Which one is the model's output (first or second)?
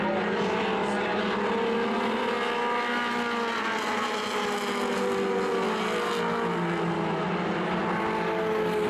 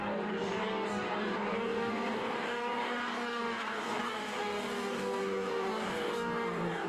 second